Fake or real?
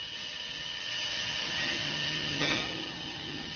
fake